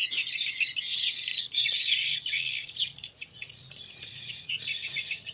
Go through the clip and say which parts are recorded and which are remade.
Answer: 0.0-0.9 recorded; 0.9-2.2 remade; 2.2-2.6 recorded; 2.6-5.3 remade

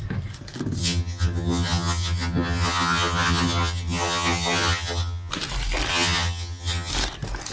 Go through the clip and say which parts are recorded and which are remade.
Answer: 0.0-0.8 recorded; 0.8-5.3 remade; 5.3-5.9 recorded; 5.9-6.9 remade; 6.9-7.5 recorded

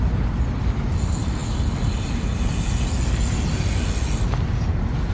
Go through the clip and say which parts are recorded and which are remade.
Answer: 0.0-5.1 recorded

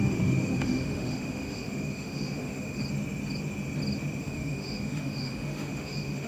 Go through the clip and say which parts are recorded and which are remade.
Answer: 0.0-2.8 remade; 2.8-4.2 recorded; 4.2-6.3 remade

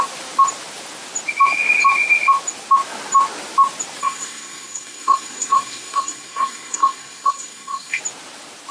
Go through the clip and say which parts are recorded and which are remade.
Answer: 0.0-4.0 recorded; 4.0-8.0 remade; 8.0-8.7 recorded

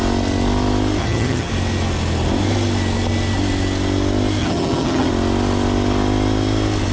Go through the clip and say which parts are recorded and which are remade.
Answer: 0.0-1.0 recorded; 1.0-1.5 remade; 1.5-4.4 recorded; 4.4-5.1 remade; 5.1-6.9 recorded

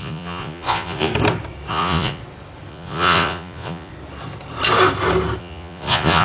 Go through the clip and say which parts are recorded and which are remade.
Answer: 0.0-1.1 remade; 1.1-1.7 recorded; 1.7-2.2 remade; 2.2-2.7 recorded; 2.7-3.9 remade; 3.9-5.4 recorded; 5.4-6.2 remade